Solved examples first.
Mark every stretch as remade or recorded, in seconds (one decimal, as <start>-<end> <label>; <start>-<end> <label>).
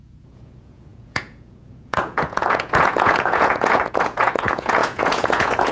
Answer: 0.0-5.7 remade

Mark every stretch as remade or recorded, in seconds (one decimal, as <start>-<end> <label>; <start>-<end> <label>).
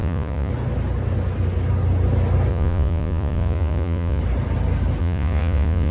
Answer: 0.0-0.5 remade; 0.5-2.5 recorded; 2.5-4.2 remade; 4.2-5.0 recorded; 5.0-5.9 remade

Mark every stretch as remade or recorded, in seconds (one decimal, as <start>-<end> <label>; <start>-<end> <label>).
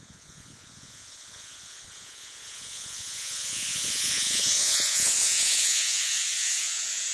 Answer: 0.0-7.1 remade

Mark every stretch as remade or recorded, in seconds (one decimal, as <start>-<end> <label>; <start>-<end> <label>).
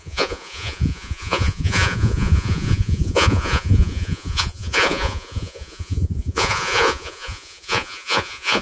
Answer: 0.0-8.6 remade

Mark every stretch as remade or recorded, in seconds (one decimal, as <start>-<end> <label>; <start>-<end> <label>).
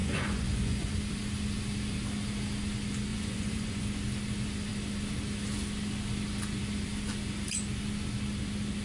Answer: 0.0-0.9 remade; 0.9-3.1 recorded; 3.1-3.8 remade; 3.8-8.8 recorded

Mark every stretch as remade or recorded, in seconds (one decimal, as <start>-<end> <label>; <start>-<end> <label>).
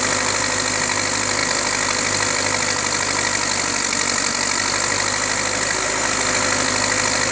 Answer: 0.0-7.3 recorded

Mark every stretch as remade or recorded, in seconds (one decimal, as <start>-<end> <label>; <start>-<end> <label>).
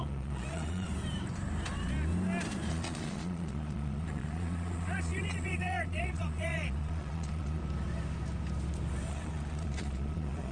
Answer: 0.0-0.9 remade; 0.9-2.7 recorded; 2.7-7.6 remade; 7.6-9.1 recorded; 9.1-10.5 remade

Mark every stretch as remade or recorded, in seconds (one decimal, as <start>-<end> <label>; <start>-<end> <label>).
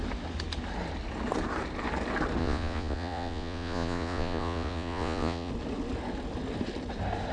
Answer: 0.0-2.4 recorded; 2.4-5.5 remade; 5.5-7.3 recorded